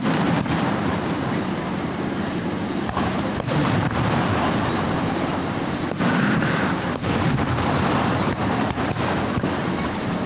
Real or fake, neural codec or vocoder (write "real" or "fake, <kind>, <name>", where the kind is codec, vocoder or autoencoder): fake, vocoder, BigVGAN v2